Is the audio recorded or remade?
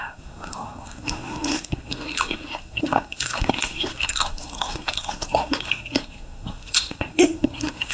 remade